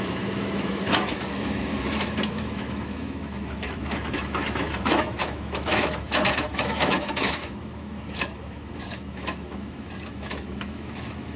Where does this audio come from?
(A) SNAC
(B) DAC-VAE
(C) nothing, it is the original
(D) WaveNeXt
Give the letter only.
B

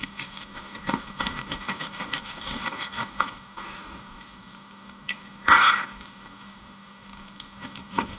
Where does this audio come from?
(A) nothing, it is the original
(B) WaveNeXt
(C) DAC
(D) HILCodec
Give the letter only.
C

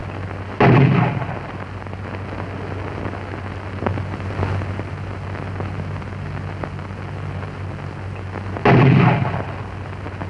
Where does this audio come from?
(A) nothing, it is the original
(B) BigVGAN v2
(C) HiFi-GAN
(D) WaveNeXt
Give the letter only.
A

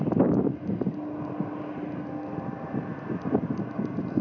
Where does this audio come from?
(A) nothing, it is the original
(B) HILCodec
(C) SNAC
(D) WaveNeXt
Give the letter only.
A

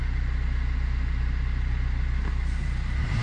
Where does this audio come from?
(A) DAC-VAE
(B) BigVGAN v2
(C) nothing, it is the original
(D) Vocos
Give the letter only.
C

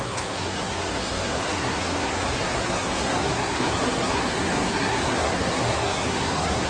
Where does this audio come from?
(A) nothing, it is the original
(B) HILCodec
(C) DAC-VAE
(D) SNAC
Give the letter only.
D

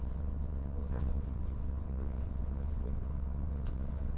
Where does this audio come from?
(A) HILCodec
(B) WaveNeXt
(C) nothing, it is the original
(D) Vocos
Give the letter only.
B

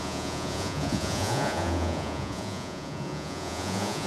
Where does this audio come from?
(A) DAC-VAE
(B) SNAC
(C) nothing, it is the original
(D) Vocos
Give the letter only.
D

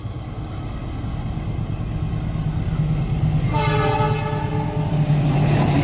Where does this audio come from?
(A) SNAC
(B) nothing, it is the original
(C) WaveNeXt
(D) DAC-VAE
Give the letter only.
B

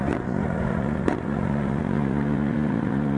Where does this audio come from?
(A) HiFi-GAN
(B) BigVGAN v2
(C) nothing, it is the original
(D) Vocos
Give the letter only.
D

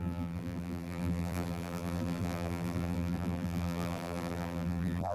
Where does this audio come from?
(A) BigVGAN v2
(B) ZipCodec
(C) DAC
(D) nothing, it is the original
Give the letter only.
A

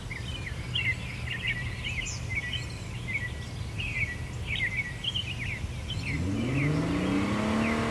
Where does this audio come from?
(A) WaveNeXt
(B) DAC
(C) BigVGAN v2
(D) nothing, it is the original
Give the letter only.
D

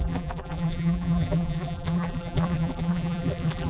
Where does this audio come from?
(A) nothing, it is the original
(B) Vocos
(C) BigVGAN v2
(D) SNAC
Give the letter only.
C